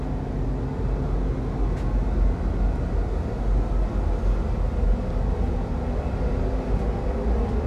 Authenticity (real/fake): real